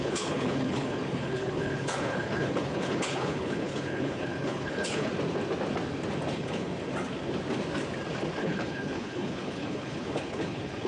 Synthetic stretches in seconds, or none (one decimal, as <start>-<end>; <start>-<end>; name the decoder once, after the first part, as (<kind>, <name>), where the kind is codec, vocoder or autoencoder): 0.0-5.1 (codec, HILCodec); 6.3-6.7; 8.4-10.9